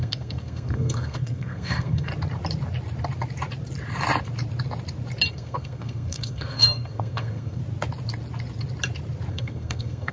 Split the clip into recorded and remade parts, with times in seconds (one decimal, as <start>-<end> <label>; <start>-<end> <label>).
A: 0.0-2.1 remade; 2.1-5.3 recorded; 5.3-7.6 remade; 7.6-9.3 recorded; 9.3-10.1 remade